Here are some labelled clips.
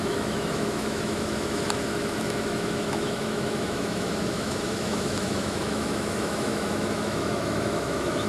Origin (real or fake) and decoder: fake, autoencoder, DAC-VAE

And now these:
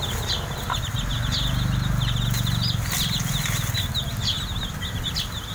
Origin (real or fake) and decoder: real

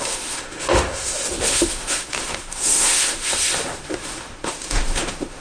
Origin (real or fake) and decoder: fake, autoencoder, DAC-VAE